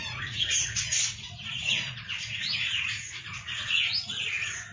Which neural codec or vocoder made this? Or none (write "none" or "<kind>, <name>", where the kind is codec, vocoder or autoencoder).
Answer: vocoder, Vocos